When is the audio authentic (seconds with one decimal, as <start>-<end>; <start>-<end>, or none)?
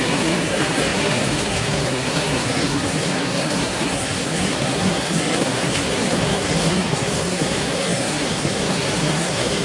none